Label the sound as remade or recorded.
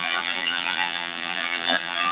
remade